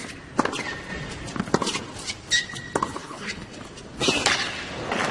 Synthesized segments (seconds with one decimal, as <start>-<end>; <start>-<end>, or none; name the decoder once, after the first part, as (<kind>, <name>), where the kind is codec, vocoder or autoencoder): 3.0-3.6 (codec, HILCodec)